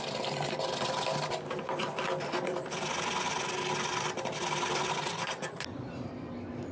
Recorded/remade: recorded